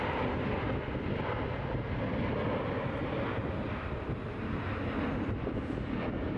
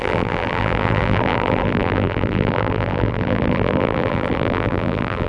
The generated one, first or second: second